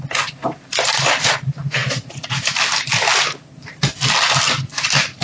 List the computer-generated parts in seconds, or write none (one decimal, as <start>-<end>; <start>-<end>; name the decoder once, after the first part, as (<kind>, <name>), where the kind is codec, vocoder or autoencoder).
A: 1.8-2.5 (vocoder, Vocos)